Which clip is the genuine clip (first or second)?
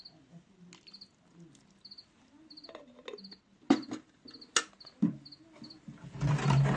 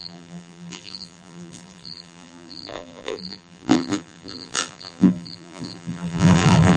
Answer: first